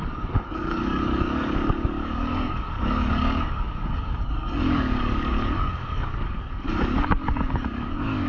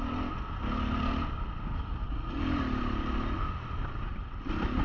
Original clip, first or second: second